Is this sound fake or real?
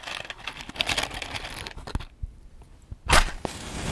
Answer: real